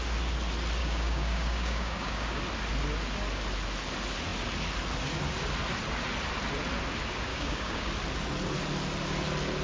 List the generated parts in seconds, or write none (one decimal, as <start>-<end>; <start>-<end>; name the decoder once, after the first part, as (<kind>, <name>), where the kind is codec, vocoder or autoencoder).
0.8-2.4 (codec, DAC); 7.3-7.9